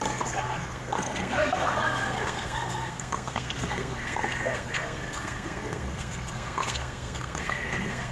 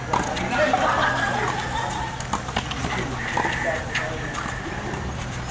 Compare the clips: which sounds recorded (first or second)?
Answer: second